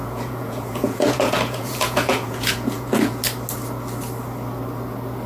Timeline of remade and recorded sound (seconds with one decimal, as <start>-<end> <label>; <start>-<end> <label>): 0.0-3.2 remade; 3.2-5.3 recorded